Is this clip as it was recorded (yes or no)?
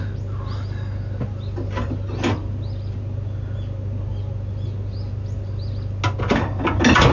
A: yes